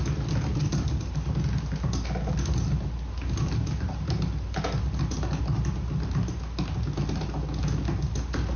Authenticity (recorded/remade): recorded